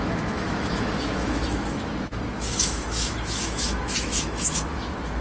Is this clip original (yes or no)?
no